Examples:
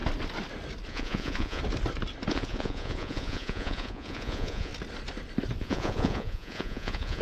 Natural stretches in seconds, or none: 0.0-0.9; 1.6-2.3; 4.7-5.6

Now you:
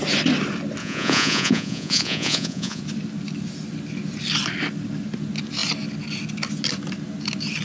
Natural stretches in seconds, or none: 0.0-0.8; 2.8-7.6

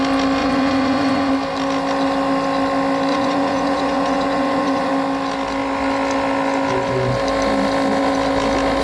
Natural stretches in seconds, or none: 0.0-0.4; 1.3-3.1; 4.9-8.8

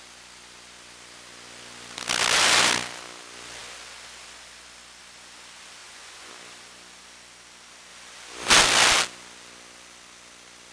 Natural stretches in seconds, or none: 0.0-5.8; 6.3-10.7

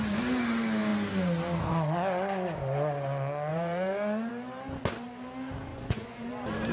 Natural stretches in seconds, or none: 0.0-3.5; 4.3-5.7; 6.3-6.7